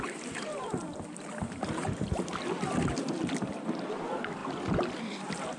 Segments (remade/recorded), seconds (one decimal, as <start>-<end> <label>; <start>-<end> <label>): 0.0-5.6 recorded